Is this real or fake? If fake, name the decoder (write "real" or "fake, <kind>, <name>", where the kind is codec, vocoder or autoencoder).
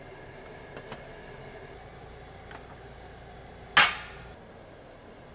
real